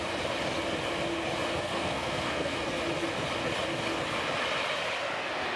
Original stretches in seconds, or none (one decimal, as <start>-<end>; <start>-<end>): 0.0-1.5; 2.8-5.6